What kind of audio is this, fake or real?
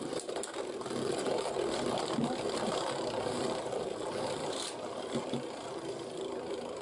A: fake